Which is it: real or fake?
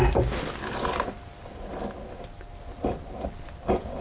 real